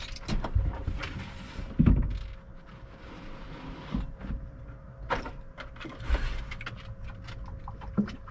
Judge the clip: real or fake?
real